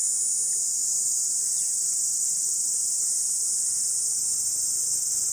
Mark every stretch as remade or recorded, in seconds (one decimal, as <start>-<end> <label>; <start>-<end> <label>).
0.0-5.3 recorded